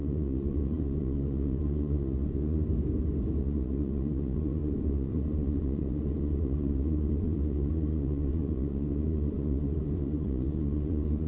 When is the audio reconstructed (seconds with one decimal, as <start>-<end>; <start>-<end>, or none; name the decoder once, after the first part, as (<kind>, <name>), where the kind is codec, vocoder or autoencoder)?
0.0-2.7 (vocoder, Vocos); 3.4-11.3